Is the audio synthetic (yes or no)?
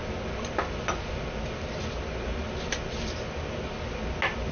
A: no